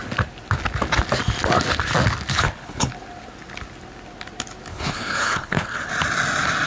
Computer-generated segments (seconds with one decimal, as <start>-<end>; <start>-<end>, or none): 2.3-2.9; 4.7-5.9